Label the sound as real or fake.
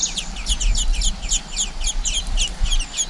real